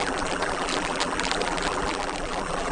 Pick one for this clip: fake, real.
fake